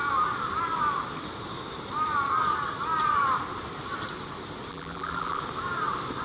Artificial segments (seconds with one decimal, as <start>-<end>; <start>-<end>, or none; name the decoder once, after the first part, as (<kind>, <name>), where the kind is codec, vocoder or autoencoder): 4.7-5.4 (vocoder, BigVGAN v2)